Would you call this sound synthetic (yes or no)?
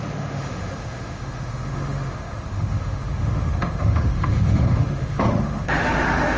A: yes